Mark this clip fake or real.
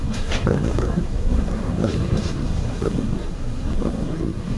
fake